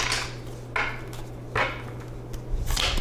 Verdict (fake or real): real